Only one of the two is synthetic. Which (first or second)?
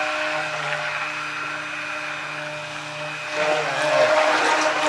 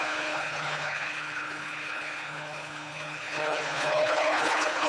second